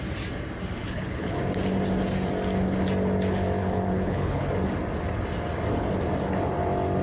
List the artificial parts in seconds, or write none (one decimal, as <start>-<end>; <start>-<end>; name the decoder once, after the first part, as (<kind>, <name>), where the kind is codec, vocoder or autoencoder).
0.8-1.4 (codec, HILCodec); 3.6-4.5